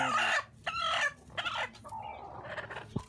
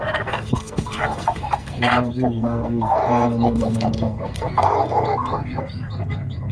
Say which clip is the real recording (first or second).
first